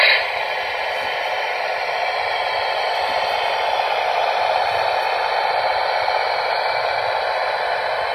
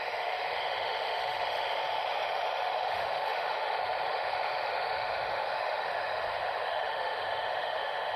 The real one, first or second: first